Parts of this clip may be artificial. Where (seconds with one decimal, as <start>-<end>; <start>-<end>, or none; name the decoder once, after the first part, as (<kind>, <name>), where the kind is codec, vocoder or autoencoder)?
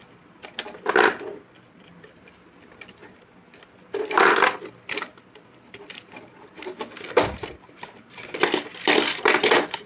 8.9-9.9 (vocoder, BigVGAN v2)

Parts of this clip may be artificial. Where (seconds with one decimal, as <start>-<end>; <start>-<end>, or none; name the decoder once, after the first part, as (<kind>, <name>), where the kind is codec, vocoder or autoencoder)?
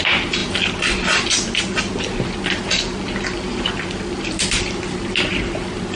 none